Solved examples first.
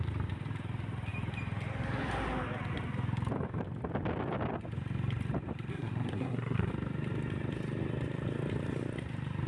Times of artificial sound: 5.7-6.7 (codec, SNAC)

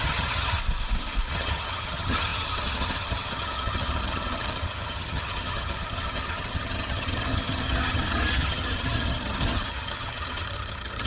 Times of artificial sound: 0.0-0.6 (vocoder, HiFi-GAN); 1.3-11.1

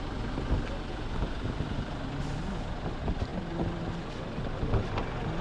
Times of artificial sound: none

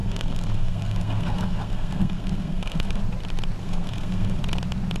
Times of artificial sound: 0.0-3.0 (codec, SNAC); 3.6-4.4